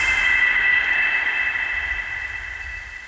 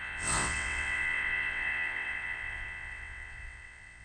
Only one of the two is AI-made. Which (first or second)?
second